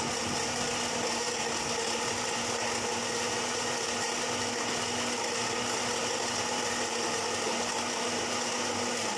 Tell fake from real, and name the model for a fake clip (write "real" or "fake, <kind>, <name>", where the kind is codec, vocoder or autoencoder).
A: real